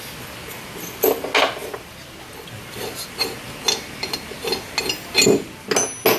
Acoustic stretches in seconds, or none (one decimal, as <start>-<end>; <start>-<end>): 0.0-1.6; 3.1-6.2